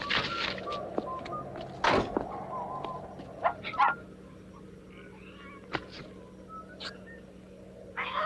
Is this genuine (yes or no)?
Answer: yes